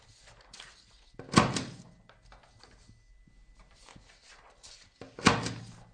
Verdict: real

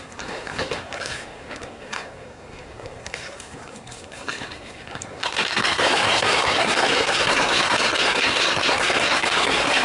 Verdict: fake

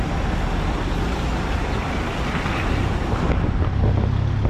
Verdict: real